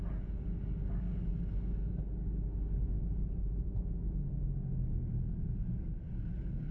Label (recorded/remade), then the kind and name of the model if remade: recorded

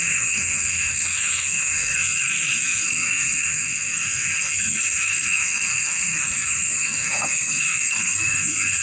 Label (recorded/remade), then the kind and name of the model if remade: remade, codec, SNAC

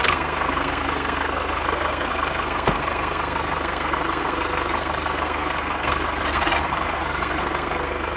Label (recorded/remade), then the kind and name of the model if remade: remade, codec, SNAC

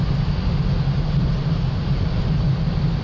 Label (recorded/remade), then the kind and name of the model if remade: recorded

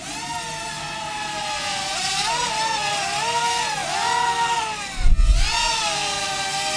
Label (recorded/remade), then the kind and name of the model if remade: recorded